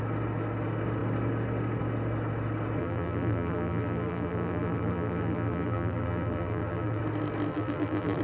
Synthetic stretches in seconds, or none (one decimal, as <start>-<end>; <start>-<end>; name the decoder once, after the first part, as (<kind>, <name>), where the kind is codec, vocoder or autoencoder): 2.8-7.0 (vocoder, BigVGAN v2); 7.5-8.2